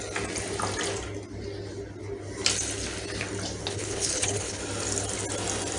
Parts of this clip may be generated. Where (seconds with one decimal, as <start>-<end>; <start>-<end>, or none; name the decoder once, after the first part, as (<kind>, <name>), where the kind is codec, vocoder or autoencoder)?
3.6-4.6 (codec, HILCodec)